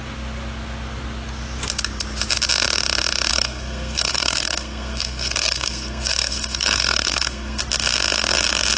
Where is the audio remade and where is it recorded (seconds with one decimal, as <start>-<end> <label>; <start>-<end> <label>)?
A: 0.0-3.3 recorded; 3.3-7.6 remade; 7.6-8.8 recorded